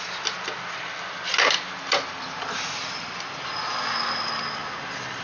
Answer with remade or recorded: recorded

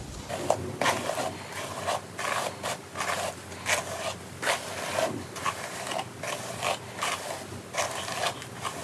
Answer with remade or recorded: recorded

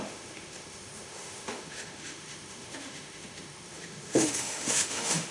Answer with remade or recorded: remade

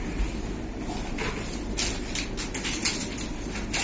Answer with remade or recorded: recorded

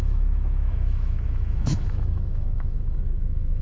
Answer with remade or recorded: remade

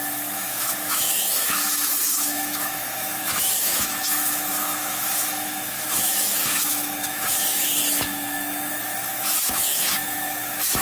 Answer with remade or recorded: remade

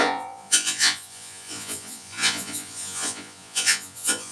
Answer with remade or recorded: remade